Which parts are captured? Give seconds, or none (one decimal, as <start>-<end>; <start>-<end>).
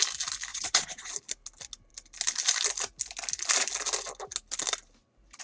0.0-0.5; 1.1-5.4